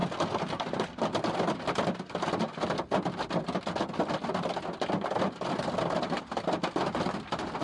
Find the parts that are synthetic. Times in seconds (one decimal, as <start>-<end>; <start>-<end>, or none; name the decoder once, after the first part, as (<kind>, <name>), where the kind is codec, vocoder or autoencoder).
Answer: none